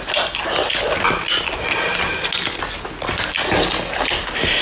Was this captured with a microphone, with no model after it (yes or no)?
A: yes